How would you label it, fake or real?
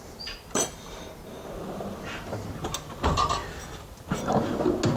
real